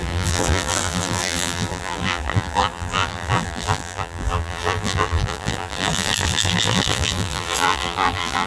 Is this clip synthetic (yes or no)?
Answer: yes